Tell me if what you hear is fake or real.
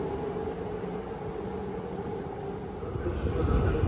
real